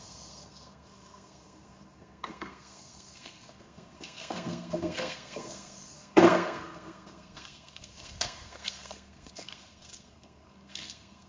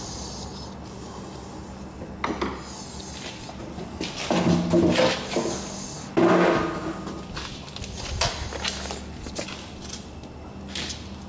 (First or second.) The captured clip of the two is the second